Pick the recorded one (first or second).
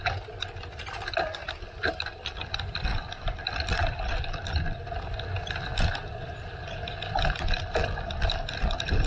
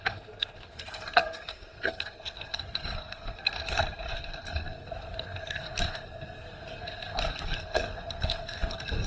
first